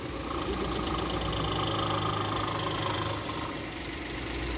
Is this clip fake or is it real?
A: real